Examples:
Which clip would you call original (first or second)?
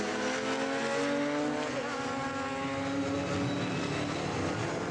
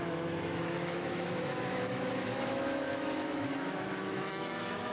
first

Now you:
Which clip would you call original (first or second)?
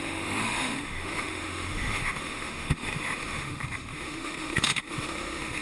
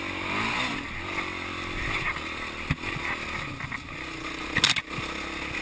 second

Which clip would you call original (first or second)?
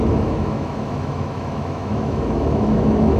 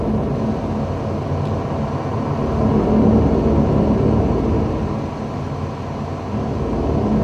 second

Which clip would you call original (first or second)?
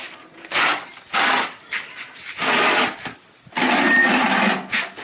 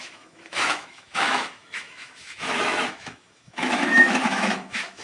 first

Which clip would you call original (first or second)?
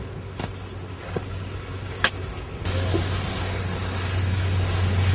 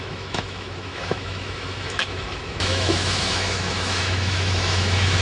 first